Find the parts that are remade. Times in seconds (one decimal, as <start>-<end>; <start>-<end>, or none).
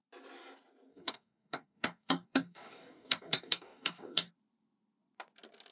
0.9-4.3